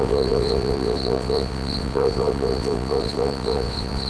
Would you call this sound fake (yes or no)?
yes